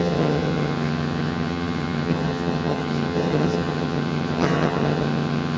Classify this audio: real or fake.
fake